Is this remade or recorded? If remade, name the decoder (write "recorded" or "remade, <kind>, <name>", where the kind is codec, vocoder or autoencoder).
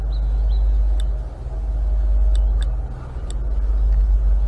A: recorded